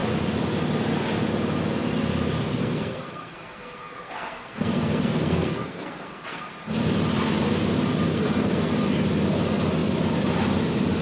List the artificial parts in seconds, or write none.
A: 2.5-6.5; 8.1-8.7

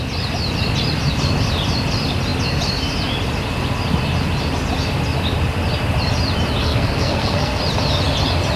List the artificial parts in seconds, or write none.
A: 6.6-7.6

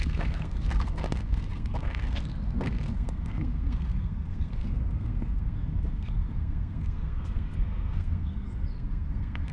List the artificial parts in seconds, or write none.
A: 0.0-9.5

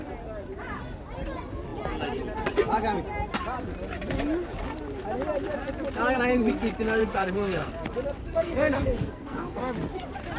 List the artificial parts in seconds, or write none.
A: 7.0-7.7; 8.2-9.6